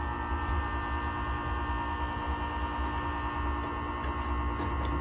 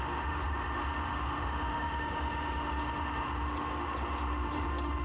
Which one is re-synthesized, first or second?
second